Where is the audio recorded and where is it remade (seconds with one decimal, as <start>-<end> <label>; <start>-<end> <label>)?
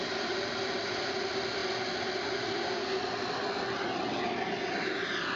0.0-5.4 recorded